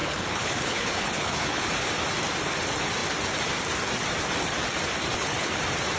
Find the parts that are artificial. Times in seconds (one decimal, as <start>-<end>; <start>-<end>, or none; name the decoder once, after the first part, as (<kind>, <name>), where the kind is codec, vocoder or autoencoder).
0.0-1.9 (codec, HILCodec); 5.1-5.6